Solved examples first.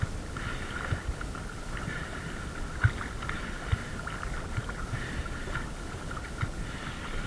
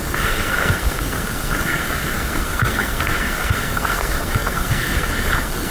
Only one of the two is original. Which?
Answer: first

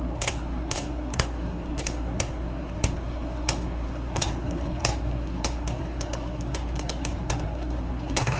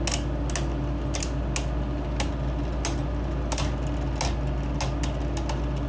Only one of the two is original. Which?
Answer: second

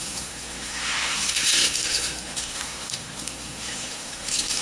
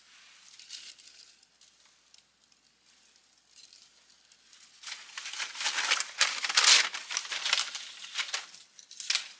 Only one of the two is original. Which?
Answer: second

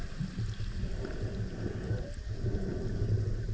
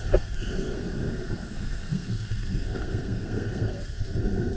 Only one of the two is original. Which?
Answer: first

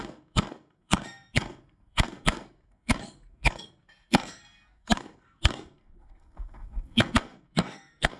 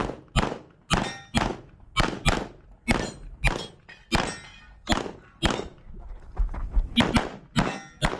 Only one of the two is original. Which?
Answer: second